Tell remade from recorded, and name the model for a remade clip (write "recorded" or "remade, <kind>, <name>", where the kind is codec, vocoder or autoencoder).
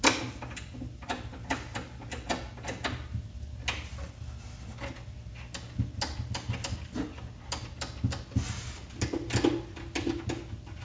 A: recorded